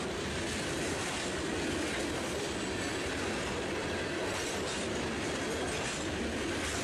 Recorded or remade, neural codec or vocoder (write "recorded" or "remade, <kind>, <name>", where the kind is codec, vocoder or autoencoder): recorded